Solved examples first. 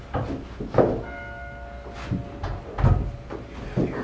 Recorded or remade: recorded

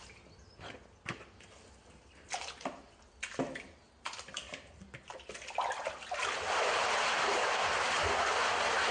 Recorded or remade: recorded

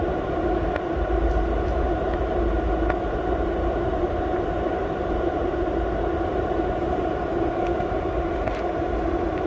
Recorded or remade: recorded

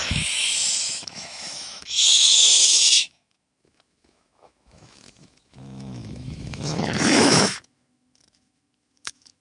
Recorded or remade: remade